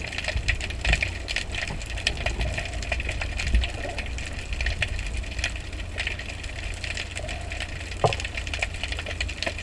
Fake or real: real